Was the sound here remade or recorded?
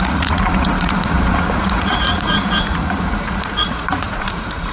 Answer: remade